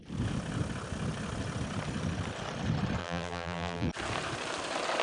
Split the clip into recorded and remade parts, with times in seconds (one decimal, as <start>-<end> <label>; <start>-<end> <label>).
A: 0.0-3.0 recorded; 3.0-3.9 remade; 3.9-5.0 recorded